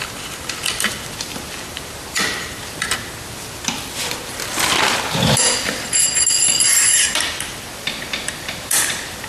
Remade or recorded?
remade